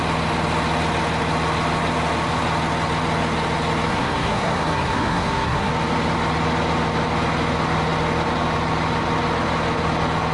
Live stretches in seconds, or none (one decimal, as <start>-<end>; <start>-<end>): 0.0-3.9; 5.7-10.3